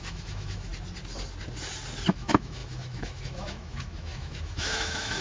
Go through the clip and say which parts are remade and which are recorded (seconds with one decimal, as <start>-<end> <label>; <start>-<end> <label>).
0.0-0.7 remade; 0.7-2.1 recorded; 2.1-5.2 remade